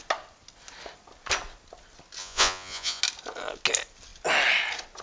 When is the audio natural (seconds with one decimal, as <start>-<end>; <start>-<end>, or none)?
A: 0.0-2.2; 3.0-5.0